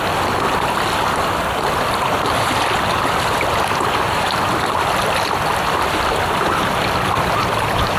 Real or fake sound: fake